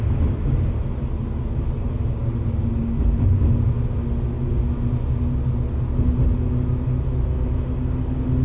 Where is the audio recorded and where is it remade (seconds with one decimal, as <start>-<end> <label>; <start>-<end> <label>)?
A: 0.0-8.4 recorded